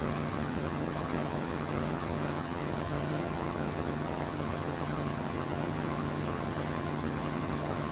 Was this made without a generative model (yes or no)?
no